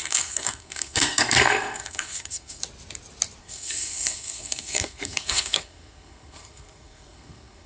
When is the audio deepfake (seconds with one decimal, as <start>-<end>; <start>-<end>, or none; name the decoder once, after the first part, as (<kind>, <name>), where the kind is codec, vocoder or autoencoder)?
0.0-2.6 (codec, SNAC); 3.4-7.7